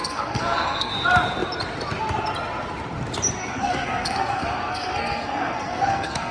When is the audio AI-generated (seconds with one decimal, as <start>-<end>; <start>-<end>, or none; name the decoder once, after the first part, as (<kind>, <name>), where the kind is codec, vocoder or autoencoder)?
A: 0.0-0.9 (codec, SNAC); 3.4-6.3